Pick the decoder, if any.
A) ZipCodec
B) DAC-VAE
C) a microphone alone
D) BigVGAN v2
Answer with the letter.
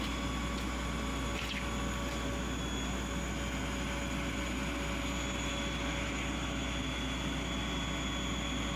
C